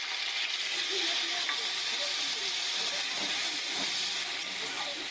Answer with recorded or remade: recorded